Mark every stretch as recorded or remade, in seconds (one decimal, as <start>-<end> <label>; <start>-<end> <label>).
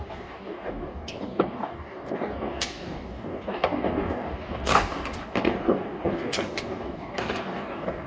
0.0-8.1 remade